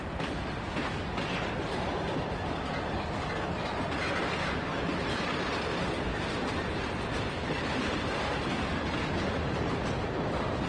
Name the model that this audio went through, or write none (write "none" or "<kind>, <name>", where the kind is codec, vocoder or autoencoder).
none